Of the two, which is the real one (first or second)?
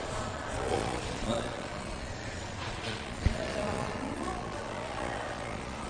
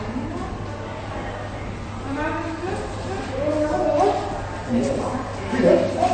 second